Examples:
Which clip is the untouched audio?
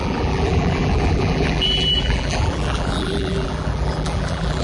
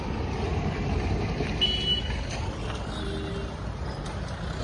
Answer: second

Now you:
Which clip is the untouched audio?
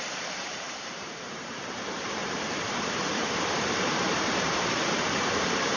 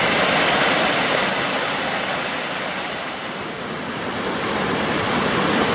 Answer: second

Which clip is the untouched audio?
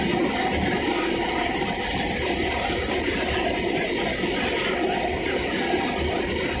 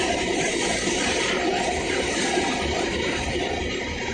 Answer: first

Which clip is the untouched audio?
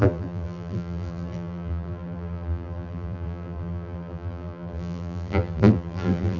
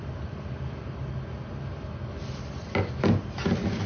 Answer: second